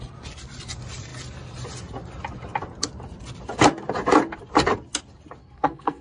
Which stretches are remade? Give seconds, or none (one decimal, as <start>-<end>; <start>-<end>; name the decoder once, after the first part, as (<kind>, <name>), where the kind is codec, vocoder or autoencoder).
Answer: 5.4-6.0 (codec, SNAC)